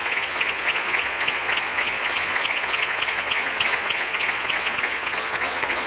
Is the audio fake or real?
fake